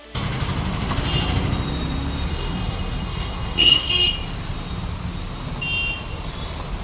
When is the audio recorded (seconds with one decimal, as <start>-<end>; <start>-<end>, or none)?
0.0-2.3; 3.9-6.8